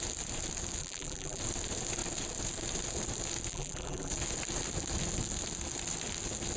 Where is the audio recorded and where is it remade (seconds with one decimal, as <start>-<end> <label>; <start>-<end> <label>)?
0.0-0.8 recorded; 0.8-1.4 remade; 1.4-3.5 recorded; 3.5-4.1 remade; 4.1-6.6 recorded